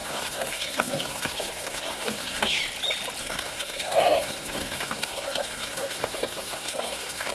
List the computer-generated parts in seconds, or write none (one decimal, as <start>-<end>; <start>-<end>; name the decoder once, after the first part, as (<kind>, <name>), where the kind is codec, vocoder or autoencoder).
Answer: 0.0-2.6 (codec, SNAC); 3.2-7.3